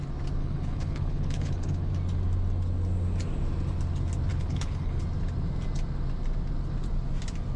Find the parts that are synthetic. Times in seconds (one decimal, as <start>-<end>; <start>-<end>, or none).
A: 0.4-1.9; 4.3-5.0